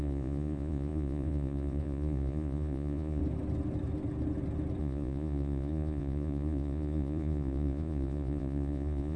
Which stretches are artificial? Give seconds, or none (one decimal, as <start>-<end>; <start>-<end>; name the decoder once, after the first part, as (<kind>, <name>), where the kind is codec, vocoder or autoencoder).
0.0-3.2 (vocoder, Vocos); 4.8-9.2